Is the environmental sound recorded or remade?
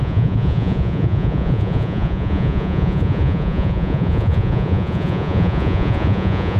remade